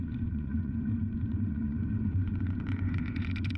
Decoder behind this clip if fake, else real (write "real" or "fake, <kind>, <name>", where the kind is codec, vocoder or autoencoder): fake, vocoder, Vocos